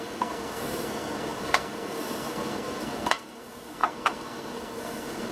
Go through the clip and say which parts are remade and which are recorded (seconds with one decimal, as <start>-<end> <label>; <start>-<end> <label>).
0.0-5.3 remade

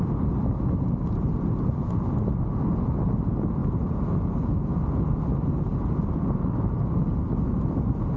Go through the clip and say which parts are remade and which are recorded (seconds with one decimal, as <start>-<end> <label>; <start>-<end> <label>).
0.0-8.2 recorded

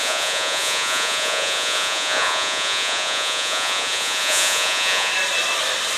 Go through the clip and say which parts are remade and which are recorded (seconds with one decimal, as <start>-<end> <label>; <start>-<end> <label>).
0.0-5.1 remade; 5.1-6.0 recorded

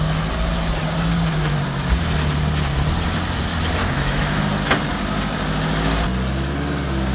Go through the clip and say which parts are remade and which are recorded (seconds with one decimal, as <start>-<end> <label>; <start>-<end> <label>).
0.0-3.8 recorded; 3.8-4.4 remade; 4.4-7.1 recorded

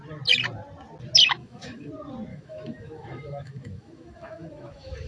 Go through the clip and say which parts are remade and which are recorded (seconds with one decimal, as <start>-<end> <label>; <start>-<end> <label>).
0.0-1.4 recorded; 1.4-1.9 remade; 1.9-2.3 recorded; 2.3-5.1 remade

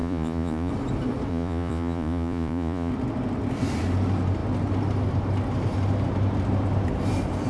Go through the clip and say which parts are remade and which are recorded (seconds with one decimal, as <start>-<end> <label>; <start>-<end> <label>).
0.0-0.7 remade; 0.7-1.3 recorded; 1.3-2.9 remade; 2.9-7.5 recorded

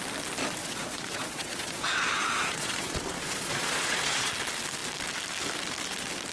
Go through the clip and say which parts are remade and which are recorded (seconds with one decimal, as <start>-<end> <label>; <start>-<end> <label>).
0.0-0.6 recorded; 0.6-4.3 remade; 4.3-6.3 recorded